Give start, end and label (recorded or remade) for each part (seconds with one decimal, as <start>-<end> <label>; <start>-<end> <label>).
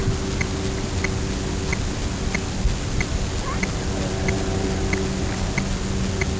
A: 0.0-6.4 recorded